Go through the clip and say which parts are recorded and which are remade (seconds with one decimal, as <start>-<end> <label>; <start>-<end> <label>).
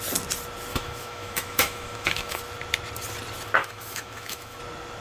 0.0-0.7 recorded; 0.7-2.4 remade; 2.4-3.6 recorded; 3.6-4.6 remade; 4.6-5.0 recorded